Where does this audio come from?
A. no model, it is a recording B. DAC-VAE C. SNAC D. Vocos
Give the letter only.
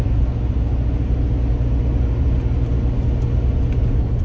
A